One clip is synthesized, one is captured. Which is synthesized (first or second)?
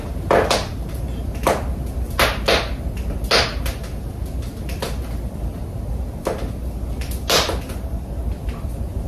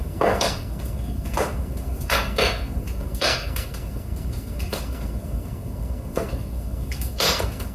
second